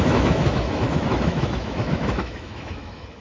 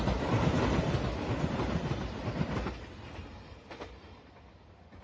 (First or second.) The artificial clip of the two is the first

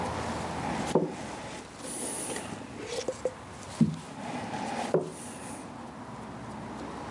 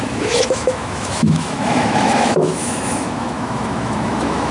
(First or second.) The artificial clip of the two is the second